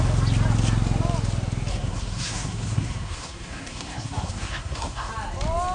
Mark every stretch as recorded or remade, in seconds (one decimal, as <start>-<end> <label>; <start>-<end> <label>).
0.0-1.7 recorded; 1.7-5.1 remade; 5.1-5.7 recorded